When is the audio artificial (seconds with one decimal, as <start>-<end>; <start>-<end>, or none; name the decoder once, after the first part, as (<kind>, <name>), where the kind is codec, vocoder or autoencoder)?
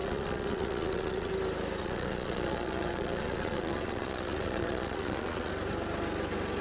0.0-1.3 (vocoder, Vocos); 1.8-5.5